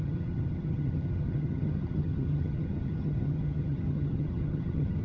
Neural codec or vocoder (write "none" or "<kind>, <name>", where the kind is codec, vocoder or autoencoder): vocoder, HiFi-GAN